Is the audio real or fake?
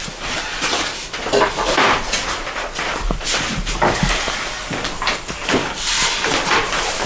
real